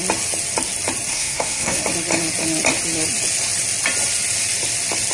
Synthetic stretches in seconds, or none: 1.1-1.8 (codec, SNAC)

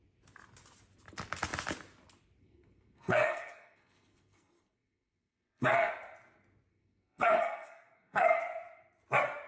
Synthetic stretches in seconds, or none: 2.4-5.9 (codec, SNAC); 6.7-8.4

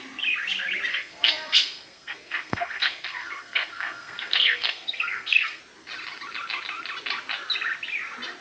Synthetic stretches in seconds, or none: 0.9-5.6 (codec, SNAC)

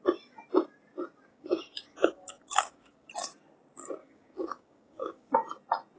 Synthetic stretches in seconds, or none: 1.3-3.1 (codec, DAC); 4.0-5.3